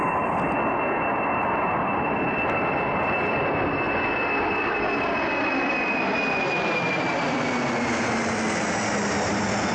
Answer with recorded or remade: recorded